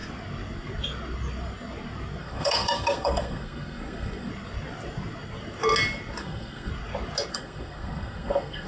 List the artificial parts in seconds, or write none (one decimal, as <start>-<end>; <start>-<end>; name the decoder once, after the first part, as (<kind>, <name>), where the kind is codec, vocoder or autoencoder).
2.2-4.3 (codec, SNAC); 6.2-6.7; 7.3-8.7